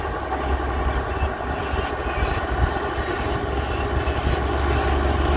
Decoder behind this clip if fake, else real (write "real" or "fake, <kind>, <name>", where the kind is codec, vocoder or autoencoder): real